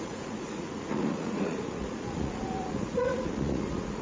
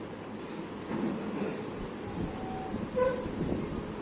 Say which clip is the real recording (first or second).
second